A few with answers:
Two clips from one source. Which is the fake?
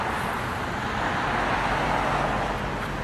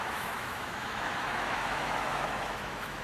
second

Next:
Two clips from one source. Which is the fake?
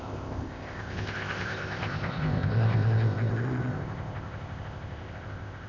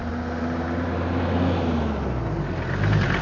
first